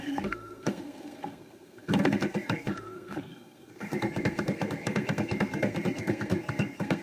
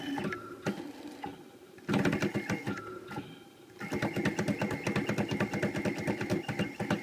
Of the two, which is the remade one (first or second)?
first